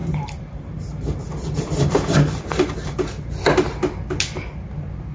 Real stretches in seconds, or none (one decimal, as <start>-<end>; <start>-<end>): 3.1-5.1